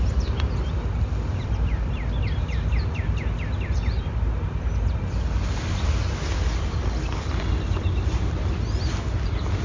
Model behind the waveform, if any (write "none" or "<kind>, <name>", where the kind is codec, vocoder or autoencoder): none